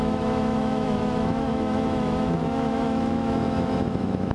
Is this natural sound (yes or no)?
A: no